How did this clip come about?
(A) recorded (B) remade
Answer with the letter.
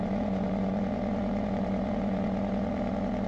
B